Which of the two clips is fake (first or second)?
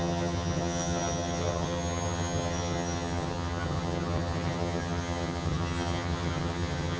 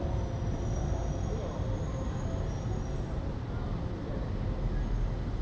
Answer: first